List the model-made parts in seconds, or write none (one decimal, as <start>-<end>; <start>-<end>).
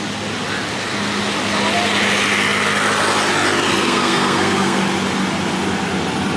3.8-4.8